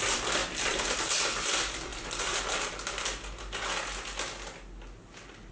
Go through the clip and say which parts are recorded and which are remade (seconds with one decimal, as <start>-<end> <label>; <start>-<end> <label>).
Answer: 0.0-5.5 recorded